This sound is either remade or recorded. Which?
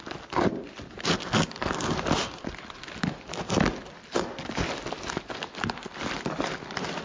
recorded